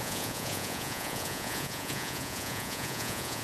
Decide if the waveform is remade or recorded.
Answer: remade